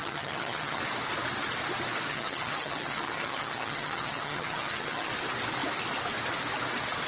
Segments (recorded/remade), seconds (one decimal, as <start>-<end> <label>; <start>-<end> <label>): 0.0-0.8 remade; 0.8-2.1 recorded; 2.1-5.1 remade; 5.1-7.1 recorded